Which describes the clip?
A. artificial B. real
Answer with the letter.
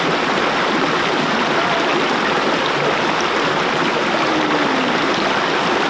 B